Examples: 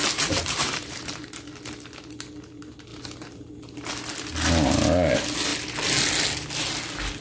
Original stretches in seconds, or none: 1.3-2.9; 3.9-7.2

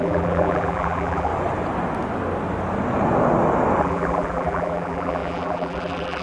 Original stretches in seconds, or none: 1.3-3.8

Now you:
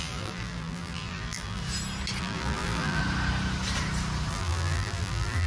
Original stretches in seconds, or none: 1.6-2.2; 3.0-4.3